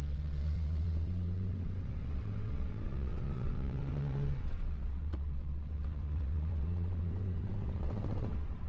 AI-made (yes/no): yes